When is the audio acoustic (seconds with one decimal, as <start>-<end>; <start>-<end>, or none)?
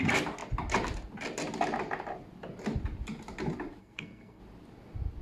0.0-3.8; 4.4-5.2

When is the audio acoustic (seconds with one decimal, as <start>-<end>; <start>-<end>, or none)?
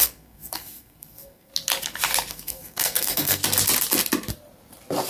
1.5-2.3; 3.4-5.1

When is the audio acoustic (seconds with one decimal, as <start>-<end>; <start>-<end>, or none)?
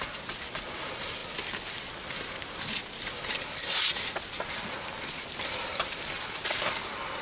0.0-7.2